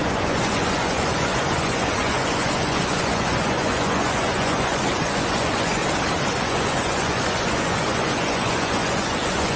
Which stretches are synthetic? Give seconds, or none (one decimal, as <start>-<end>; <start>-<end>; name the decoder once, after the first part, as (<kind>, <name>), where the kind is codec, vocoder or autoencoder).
0.0-5.8 (vocoder, Vocos); 6.4-9.6